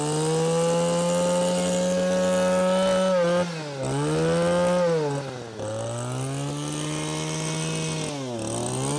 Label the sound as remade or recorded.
recorded